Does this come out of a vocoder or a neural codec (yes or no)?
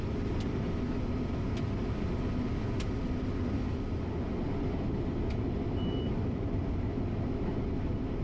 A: no